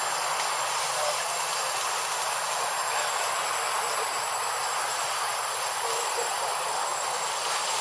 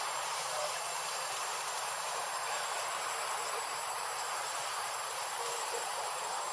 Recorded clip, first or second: first